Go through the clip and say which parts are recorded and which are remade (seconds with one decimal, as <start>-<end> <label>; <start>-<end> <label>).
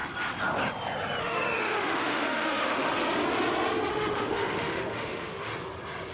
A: 0.0-1.2 recorded; 1.2-2.9 remade; 2.9-3.9 recorded; 3.9-5.5 remade; 5.5-6.1 recorded